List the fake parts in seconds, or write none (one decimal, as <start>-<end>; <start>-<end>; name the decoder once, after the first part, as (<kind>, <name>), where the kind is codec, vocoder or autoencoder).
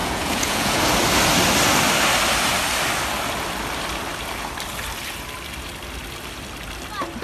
0.0-0.8 (vocoder, Vocos)